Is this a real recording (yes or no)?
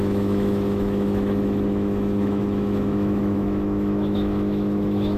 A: no